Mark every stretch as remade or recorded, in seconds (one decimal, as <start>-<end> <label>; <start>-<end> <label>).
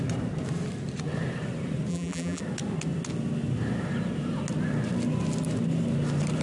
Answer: 0.0-1.9 recorded; 1.9-2.4 remade; 2.4-6.4 recorded